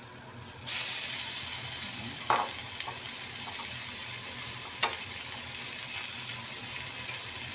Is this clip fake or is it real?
real